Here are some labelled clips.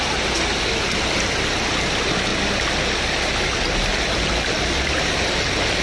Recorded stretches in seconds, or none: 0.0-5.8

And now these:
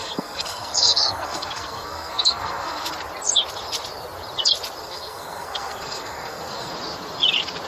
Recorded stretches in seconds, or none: 2.9-4.8; 6.7-7.7

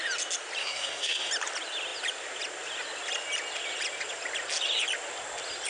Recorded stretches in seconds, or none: 0.0-0.6; 1.3-5.7

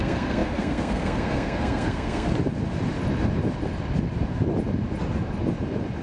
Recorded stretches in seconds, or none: 2.3-6.0